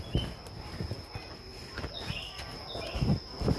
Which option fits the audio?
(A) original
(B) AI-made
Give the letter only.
A